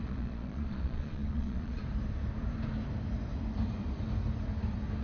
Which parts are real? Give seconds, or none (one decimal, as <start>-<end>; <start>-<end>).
1.8-5.0